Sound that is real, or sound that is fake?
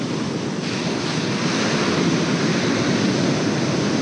real